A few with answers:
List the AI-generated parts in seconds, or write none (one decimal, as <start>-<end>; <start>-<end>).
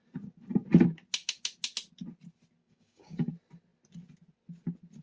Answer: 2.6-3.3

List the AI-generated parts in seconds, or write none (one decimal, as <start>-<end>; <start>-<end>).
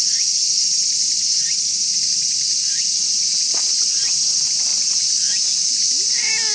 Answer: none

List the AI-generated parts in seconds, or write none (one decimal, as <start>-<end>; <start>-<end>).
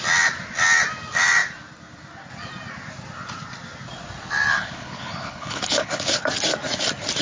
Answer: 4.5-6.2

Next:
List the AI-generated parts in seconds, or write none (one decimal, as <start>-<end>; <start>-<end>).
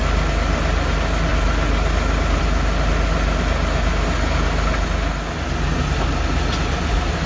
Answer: none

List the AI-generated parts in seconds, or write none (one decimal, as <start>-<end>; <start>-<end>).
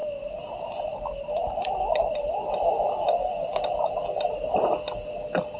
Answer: none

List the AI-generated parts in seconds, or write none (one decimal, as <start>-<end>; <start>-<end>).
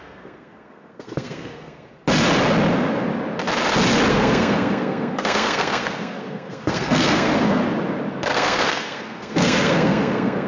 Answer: 0.0-1.9; 4.1-7.6; 8.1-10.5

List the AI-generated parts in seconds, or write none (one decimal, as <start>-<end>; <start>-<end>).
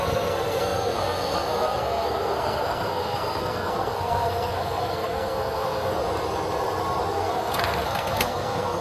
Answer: 0.0-6.0; 7.1-8.8